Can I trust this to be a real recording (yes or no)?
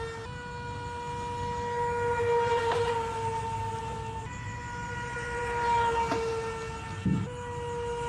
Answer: yes